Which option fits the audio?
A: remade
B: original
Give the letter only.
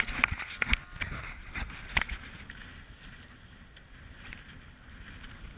B